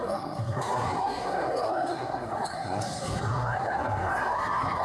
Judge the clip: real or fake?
fake